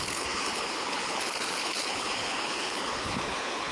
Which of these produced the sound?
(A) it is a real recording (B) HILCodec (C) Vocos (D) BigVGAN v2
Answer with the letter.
B